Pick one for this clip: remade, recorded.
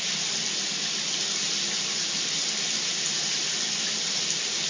recorded